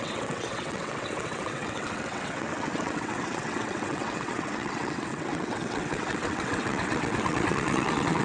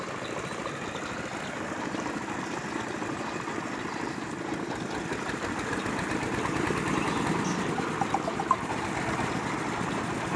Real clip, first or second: second